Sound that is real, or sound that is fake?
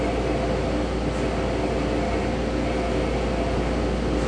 real